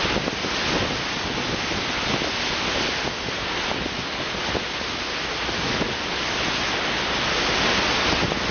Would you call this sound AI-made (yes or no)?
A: no